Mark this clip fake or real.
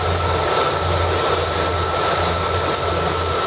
real